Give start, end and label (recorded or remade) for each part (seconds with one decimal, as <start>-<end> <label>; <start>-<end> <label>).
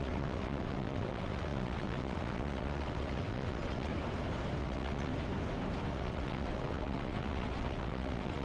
0.0-3.9 remade; 3.9-4.6 recorded; 4.6-5.1 remade; 5.1-5.9 recorded; 5.9-8.4 remade